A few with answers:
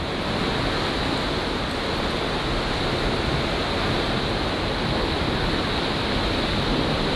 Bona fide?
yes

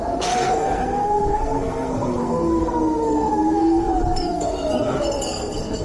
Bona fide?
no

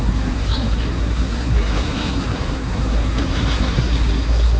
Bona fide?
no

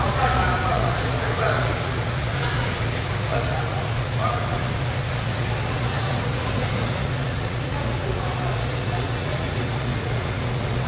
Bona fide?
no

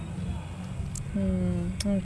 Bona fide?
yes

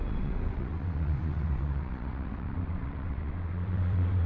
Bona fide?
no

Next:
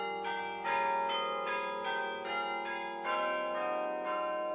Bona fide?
yes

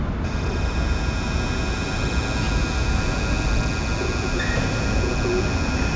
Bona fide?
yes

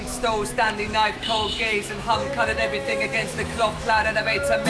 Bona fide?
no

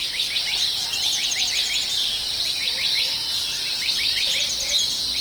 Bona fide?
yes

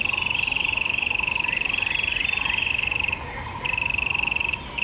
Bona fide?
yes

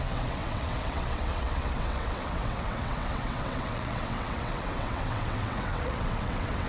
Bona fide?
no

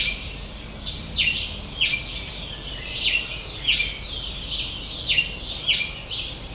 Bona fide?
yes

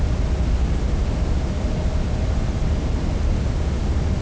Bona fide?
yes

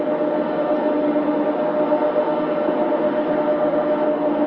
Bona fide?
yes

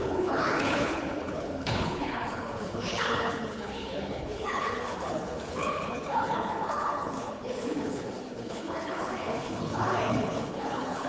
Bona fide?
no